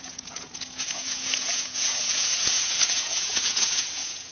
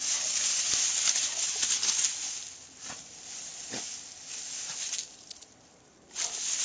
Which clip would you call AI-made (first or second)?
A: first